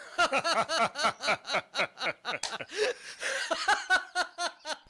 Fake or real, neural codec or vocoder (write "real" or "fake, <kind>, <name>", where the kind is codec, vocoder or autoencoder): real